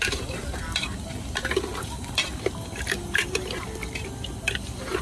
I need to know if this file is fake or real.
real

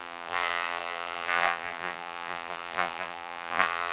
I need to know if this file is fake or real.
fake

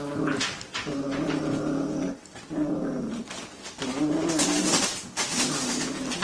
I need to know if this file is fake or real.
real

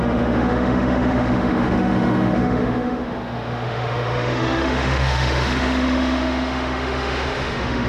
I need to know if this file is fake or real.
fake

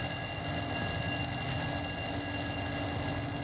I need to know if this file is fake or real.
real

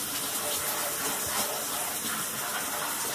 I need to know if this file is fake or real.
fake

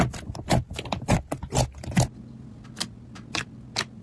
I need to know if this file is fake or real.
real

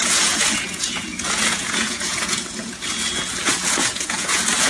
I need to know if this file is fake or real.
fake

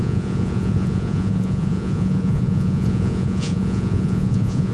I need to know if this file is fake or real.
fake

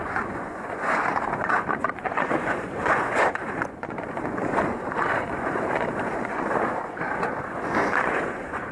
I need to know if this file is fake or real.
fake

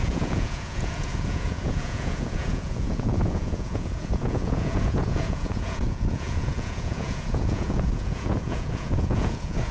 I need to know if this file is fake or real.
fake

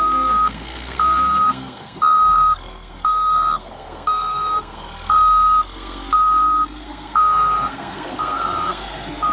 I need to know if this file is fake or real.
fake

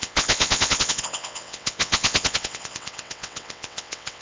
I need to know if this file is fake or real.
fake